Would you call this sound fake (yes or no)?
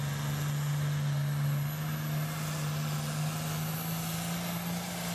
no